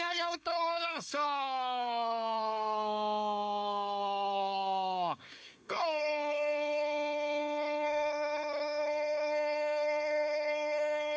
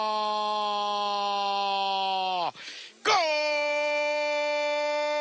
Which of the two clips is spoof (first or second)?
first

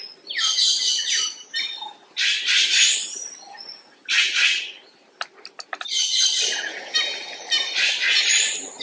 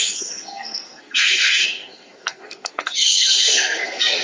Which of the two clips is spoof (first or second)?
second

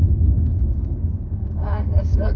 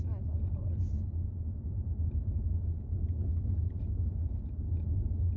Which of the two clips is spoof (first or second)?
first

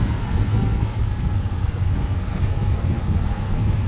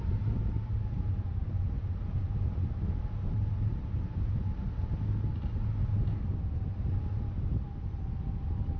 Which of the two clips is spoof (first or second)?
first